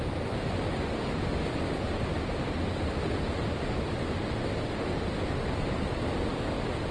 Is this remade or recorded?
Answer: recorded